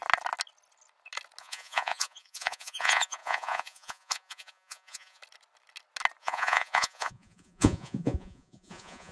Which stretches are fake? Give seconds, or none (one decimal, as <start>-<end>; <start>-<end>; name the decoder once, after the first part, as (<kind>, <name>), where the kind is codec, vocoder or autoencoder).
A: 1.4-5.2 (vocoder, Vocos); 6.2-9.1

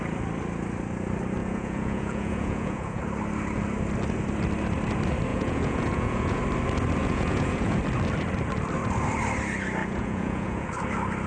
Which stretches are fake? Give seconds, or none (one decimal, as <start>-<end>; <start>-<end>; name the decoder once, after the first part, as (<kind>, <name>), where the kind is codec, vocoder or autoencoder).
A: 1.4-3.0 (vocoder, Vocos); 5.3-6.4; 7.0-7.8; 9.8-10.7

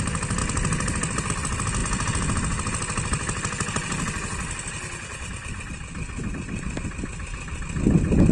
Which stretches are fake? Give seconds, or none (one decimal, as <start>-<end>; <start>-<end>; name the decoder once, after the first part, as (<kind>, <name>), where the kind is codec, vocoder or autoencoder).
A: none